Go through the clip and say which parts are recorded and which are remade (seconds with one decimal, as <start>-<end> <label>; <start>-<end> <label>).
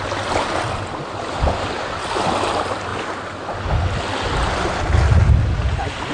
0.0-6.1 recorded